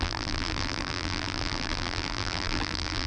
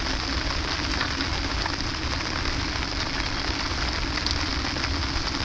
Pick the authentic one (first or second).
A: second